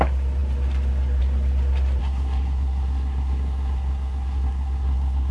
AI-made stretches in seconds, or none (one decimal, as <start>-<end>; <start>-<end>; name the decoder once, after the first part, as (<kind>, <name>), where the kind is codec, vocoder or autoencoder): 2.0-5.3 (codec, SNAC)